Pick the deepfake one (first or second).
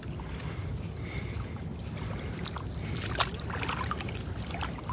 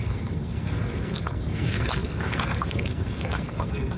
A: second